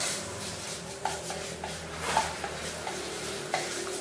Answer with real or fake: fake